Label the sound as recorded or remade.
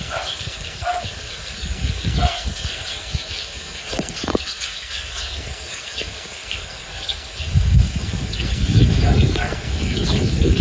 remade